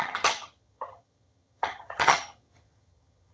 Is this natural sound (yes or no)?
no